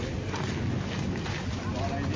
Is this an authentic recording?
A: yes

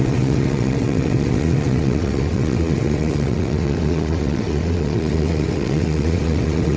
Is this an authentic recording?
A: no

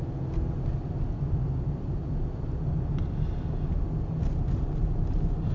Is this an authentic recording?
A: yes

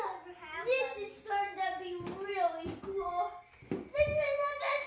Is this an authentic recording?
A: yes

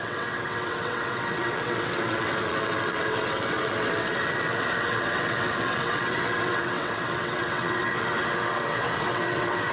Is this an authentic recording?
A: no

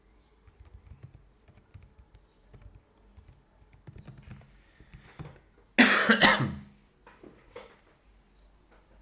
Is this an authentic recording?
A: yes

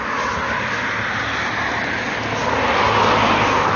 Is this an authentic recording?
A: yes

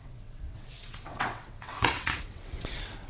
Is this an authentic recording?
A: no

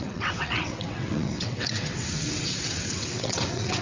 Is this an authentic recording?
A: no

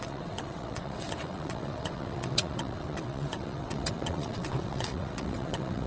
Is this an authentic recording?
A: no